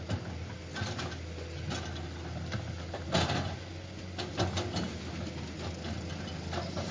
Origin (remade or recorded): recorded